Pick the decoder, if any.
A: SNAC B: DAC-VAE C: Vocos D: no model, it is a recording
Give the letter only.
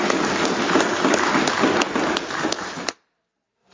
D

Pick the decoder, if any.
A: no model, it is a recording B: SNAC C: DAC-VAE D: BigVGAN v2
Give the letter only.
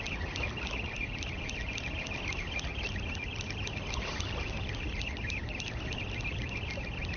A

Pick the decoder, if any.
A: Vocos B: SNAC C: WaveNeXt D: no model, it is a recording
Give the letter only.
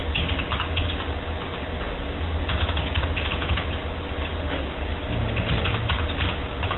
D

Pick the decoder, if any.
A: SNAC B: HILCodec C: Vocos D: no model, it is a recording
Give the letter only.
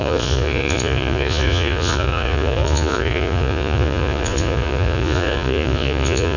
C